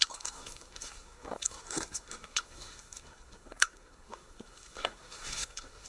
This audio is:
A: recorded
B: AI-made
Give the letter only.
B